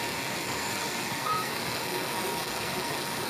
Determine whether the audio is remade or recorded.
remade